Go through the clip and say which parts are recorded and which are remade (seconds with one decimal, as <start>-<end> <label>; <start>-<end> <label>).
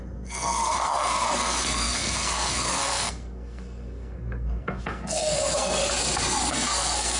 0.0-5.8 remade; 5.8-6.5 recorded; 6.5-7.2 remade